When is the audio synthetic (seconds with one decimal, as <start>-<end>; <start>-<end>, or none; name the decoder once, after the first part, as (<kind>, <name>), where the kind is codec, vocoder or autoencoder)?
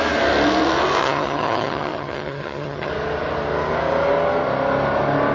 1.0-2.9 (vocoder, HiFi-GAN)